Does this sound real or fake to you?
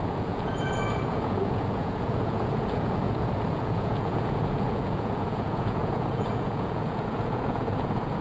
fake